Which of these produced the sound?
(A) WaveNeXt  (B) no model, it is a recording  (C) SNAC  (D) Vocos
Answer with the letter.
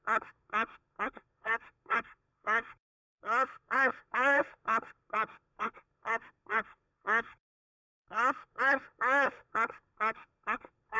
C